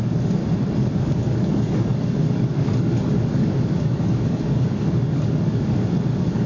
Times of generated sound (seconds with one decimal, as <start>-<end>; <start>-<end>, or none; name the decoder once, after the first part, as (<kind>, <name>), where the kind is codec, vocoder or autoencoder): 0.0-0.4 (codec, DAC); 0.9-6.5